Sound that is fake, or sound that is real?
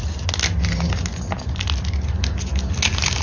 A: real